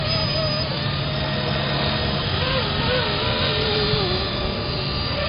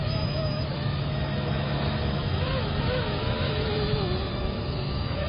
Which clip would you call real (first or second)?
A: first